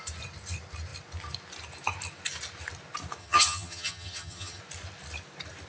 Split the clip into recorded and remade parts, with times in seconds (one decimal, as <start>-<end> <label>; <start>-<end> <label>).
0.0-3.2 recorded; 3.2-4.6 remade; 4.6-5.7 recorded